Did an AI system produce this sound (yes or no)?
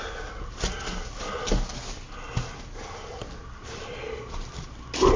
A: no